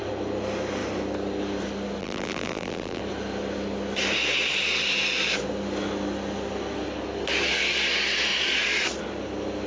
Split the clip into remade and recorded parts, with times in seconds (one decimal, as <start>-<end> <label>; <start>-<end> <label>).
0.0-2.0 recorded; 2.0-3.0 remade; 3.0-9.7 recorded